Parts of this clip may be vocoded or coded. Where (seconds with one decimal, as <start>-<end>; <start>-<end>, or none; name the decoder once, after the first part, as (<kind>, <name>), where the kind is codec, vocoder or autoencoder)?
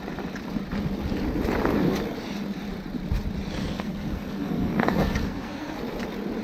3.6-5.8 (codec, SNAC)